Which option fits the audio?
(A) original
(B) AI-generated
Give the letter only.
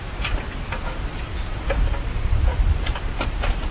A